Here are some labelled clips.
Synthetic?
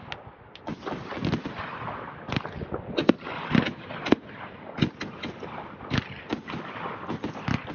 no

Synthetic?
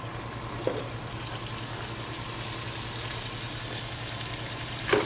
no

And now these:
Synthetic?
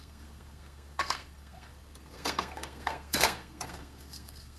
yes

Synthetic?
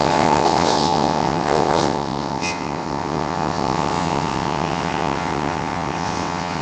yes